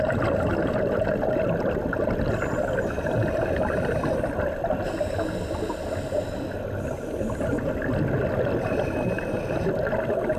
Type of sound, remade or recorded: recorded